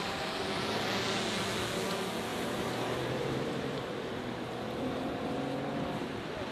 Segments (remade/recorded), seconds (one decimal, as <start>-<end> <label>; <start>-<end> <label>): 0.0-2.3 recorded; 2.3-5.2 remade; 5.2-6.5 recorded